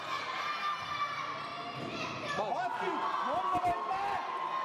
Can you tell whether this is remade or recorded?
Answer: recorded